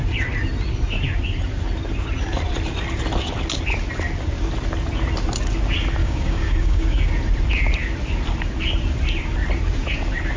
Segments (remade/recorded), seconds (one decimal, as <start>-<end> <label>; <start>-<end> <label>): 0.0-6.0 recorded; 6.0-7.1 remade; 7.1-10.4 recorded